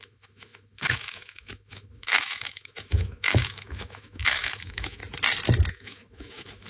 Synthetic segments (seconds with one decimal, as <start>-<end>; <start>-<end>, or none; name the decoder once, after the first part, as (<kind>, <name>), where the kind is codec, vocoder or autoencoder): 0.0-5.0 (autoencoder, DAC-VAE); 5.7-6.7